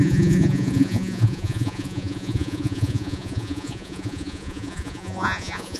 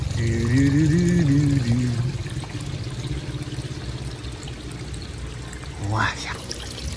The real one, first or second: second